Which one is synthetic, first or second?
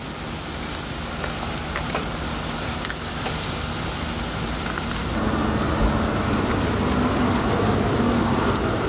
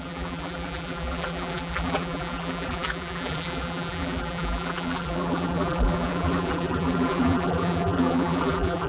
second